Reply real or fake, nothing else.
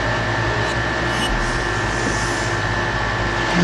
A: real